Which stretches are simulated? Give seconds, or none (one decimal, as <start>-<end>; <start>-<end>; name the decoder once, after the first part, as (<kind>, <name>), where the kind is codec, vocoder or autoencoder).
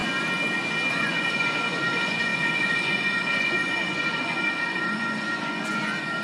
0.9-6.2 (vocoder, Vocos)